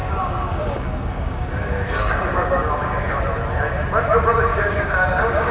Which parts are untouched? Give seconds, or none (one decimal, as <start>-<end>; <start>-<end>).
3.2-4.5